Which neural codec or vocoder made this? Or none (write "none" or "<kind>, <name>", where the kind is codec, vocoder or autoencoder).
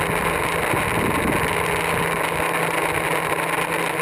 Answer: none